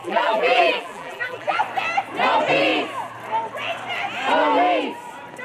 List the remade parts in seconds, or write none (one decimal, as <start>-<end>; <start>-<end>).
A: 0.0-1.6